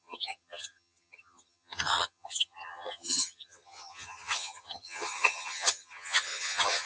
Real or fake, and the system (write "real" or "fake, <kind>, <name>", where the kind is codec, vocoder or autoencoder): fake, vocoder, HiFi-GAN